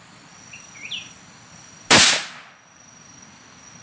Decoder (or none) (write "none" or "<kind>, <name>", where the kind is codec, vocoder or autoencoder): none